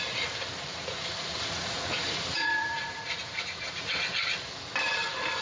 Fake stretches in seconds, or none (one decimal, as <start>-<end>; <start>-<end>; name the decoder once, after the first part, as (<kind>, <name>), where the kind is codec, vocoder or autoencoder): 0.7-3.9 (vocoder, Vocos)